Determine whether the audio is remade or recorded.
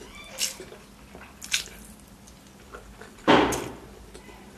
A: recorded